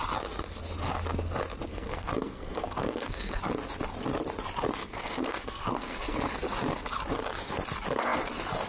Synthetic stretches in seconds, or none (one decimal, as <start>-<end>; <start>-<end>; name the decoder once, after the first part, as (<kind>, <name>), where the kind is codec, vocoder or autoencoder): 1.7-3.4 (codec, SNAC); 4.8-6.2

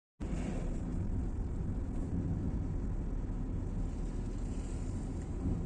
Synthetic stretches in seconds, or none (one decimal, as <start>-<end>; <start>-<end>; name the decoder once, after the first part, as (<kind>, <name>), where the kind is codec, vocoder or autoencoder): 0.9-2.3 (vocoder, BigVGAN v2)